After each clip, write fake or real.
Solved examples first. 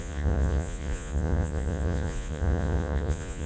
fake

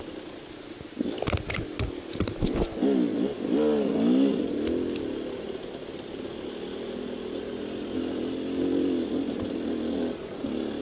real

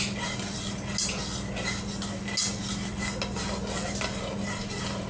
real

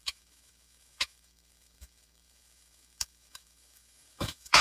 fake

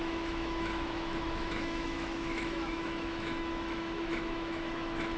fake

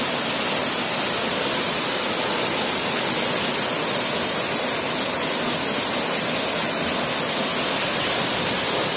real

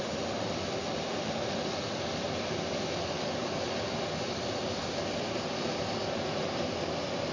real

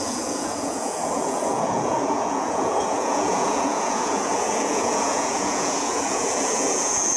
fake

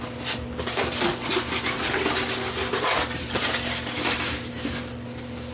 real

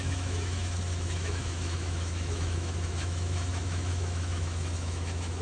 fake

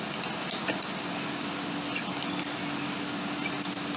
real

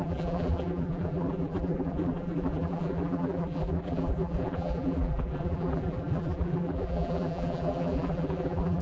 fake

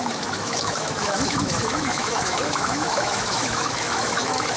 fake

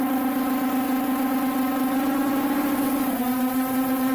real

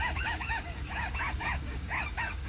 fake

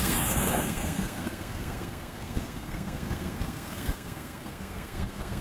fake